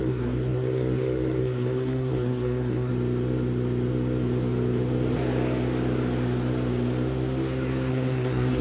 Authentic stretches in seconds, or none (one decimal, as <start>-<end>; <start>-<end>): 2.9-7.9